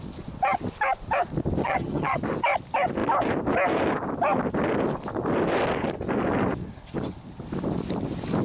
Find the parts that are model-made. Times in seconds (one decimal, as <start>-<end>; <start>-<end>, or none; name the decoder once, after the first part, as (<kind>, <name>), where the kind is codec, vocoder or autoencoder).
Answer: 1.6-2.2 (vocoder, HiFi-GAN)